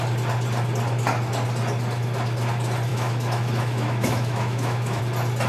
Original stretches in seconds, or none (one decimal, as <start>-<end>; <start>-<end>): 0.0-2.9; 5.0-5.5